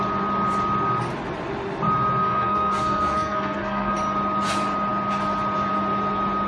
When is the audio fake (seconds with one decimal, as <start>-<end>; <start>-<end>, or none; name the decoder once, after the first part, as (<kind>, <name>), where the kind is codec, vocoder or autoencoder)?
2.2-3.9 (codec, SNAC)

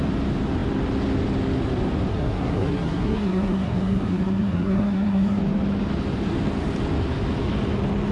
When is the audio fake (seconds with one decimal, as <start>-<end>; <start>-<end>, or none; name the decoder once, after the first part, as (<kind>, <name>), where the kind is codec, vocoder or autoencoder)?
2.1-5.4 (codec, SNAC)

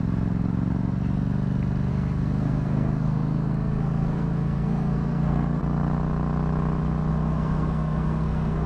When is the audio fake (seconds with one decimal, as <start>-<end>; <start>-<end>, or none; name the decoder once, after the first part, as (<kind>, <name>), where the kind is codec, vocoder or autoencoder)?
1.9-5.6 (codec, SNAC); 7.1-8.7

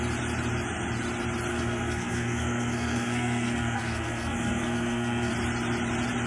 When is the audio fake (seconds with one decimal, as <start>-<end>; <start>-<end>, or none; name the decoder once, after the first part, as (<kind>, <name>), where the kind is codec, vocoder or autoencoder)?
1.5-5.3 (codec, SNAC)